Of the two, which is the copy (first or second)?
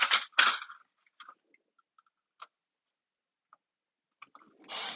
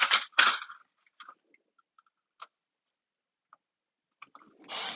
second